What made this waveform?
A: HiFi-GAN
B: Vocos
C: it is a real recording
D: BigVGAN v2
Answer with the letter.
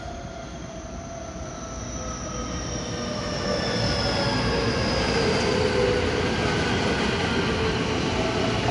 C